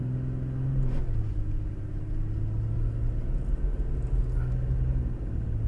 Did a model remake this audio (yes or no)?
no